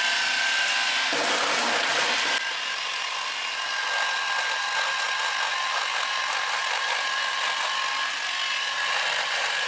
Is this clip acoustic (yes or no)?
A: yes